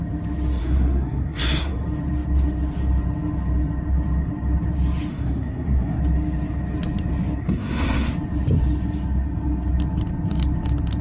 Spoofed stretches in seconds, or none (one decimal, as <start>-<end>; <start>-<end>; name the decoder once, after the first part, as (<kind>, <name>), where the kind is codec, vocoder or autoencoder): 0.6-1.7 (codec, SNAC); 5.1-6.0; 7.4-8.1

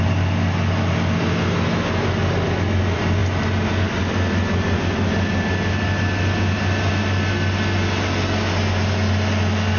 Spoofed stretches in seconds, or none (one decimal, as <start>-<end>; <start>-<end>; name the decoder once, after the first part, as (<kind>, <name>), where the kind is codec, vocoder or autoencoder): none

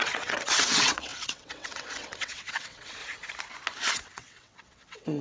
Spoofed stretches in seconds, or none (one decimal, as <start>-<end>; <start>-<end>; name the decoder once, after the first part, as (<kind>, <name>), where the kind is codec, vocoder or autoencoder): 0.0-3.0 (vocoder, WaveNeXt); 3.9-5.2

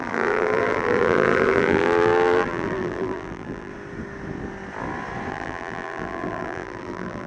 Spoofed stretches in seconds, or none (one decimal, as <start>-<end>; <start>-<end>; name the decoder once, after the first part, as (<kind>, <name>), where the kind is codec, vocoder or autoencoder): 0.0-3.7 (vocoder, BigVGAN v2); 5.3-7.3